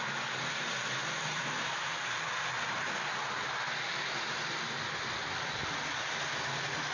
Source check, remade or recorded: recorded